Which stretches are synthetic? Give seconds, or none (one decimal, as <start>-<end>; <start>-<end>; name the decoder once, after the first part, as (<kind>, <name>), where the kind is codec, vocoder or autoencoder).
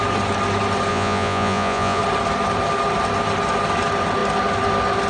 0.9-2.0 (vocoder, Vocos)